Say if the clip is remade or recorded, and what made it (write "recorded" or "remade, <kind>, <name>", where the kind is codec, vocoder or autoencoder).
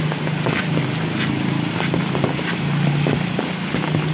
recorded